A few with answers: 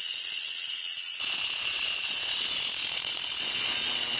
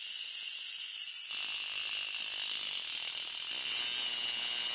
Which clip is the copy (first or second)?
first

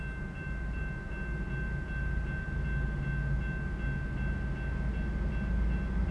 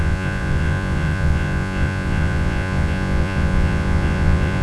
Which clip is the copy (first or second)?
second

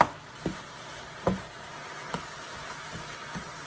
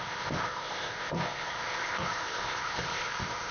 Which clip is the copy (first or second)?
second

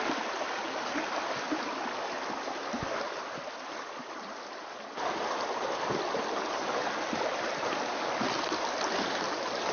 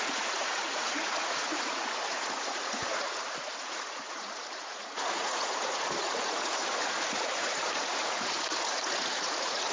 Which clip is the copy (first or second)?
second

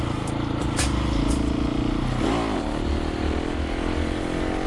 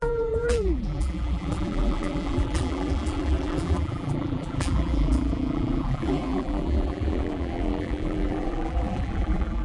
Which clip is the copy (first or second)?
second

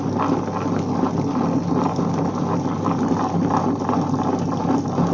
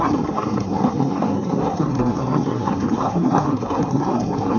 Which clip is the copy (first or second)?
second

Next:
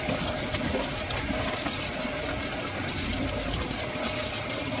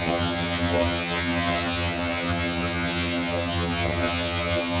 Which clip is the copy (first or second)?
second